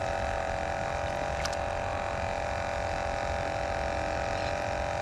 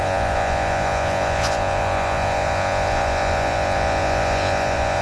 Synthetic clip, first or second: second